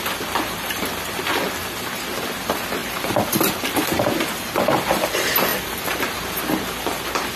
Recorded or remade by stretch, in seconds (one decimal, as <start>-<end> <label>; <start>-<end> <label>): 0.0-5.5 recorded; 5.5-6.0 remade; 6.0-7.4 recorded